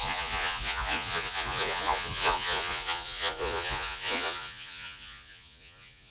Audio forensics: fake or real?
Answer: fake